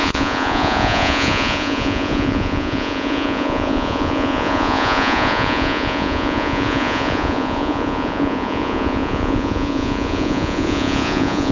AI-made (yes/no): yes